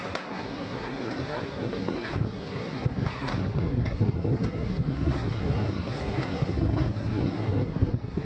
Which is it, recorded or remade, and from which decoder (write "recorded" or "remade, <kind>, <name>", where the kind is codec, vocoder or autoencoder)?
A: remade, codec, SNAC